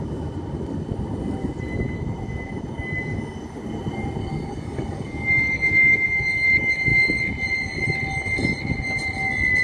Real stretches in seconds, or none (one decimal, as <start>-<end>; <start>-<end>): 0.0-4.2; 6.1-9.6